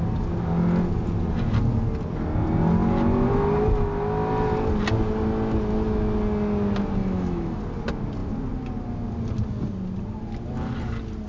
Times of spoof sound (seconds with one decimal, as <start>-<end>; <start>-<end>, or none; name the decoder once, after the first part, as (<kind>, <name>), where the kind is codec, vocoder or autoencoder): 7.0-7.6 (autoencoder, DAC-VAE)